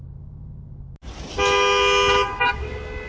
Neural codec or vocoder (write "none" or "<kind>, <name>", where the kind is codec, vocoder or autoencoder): none